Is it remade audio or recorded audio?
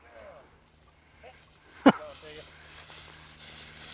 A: recorded